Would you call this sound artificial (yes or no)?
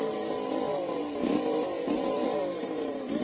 yes